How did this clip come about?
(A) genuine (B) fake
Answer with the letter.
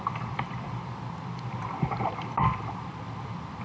B